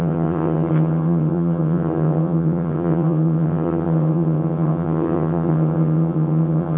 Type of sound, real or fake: fake